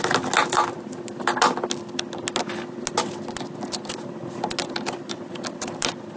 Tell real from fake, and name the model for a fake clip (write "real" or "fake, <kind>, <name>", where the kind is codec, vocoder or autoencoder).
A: real